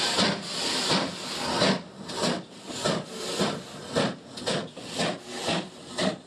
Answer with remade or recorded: recorded